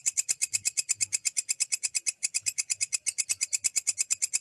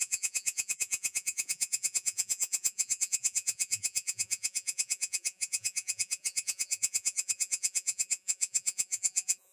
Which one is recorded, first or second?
first